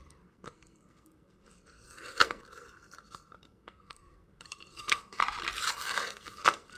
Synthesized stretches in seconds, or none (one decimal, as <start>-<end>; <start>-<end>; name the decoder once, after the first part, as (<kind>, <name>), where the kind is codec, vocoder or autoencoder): 0.0-5.2 (codec, SNAC); 5.7-6.8